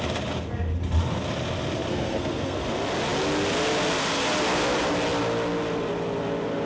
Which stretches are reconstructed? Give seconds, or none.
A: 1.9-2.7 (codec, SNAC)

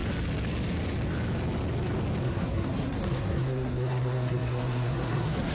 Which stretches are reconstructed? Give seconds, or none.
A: 2.2-5.5 (codec, SNAC)

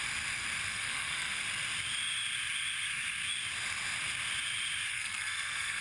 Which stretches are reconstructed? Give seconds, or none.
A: 0.7-1.4 (codec, SNAC); 4.9-5.8

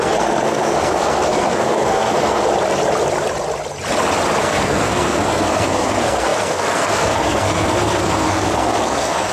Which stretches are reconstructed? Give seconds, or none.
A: 0.0-2.4 (codec, SNAC); 4.4-9.3

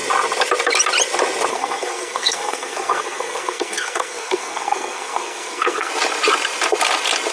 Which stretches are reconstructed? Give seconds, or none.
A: 1.5-5.9 (codec, SNAC)

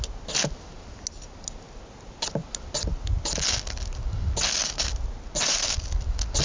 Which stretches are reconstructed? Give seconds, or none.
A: none